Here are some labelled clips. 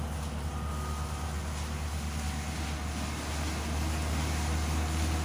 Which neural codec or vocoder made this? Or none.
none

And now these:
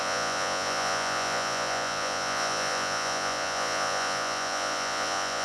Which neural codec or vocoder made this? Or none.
vocoder, Vocos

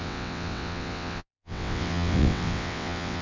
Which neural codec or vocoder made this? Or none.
vocoder, WaveNeXt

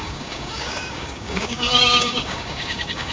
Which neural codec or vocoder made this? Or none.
codec, DAC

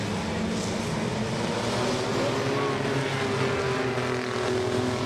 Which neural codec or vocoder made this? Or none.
none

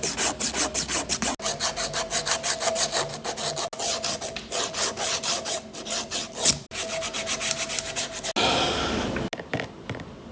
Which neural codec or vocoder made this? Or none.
none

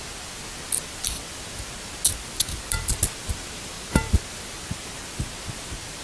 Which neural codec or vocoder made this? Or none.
none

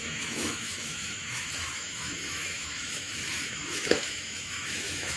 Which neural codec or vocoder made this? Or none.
autoencoder, DAC-VAE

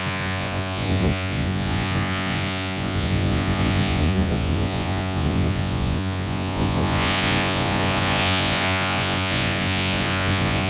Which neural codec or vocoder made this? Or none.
vocoder, Vocos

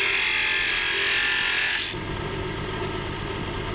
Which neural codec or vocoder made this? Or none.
none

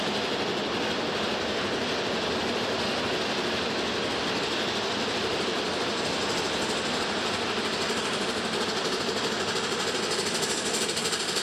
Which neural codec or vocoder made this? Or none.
none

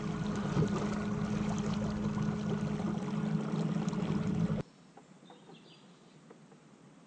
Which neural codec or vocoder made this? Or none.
none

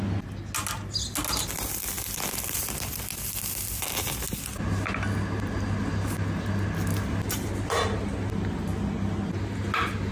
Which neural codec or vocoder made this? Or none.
none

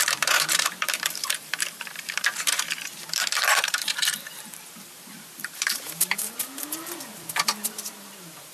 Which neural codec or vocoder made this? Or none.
vocoder, BigVGAN v2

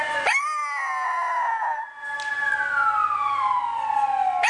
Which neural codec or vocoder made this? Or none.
none